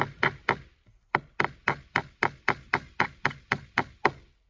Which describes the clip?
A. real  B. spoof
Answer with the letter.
A